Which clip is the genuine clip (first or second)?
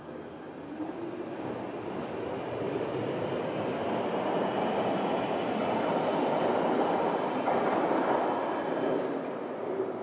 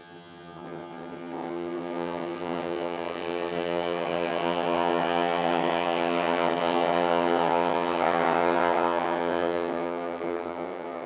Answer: first